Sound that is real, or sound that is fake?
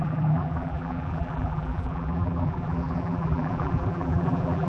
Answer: fake